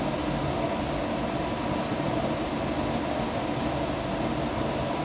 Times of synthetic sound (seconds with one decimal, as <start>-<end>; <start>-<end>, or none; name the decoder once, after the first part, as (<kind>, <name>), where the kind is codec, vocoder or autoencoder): 1.9-2.5 (vocoder, BigVGAN v2)